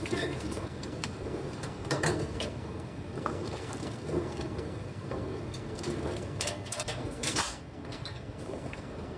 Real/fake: fake